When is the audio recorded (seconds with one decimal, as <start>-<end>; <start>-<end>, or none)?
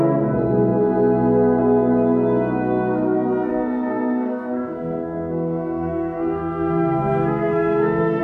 0.0-3.5